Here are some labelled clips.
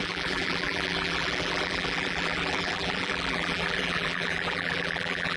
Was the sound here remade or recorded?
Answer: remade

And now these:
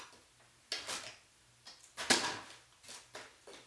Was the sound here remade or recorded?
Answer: recorded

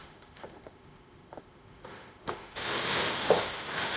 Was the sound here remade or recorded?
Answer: remade